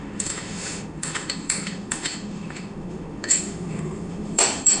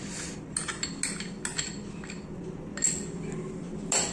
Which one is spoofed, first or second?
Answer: first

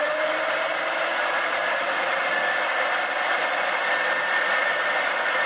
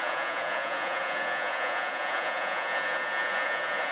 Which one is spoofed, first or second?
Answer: second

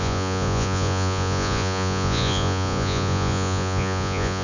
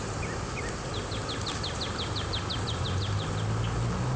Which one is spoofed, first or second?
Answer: first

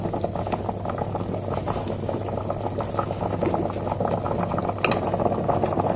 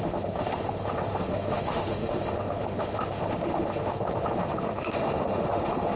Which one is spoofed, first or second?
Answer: second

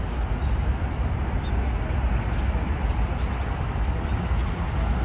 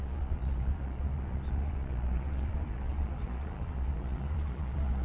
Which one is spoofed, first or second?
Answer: second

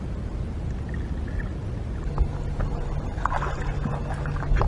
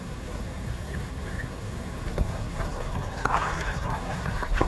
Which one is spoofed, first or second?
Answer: second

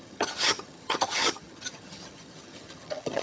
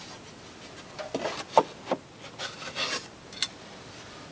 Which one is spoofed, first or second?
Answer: first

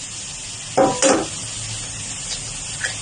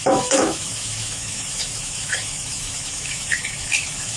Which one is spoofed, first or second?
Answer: second